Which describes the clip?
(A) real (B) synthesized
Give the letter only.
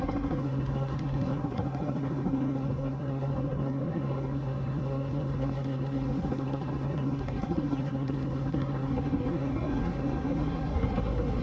B